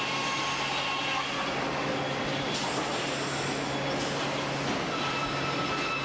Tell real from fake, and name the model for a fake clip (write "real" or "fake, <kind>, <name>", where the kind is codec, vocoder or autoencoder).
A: real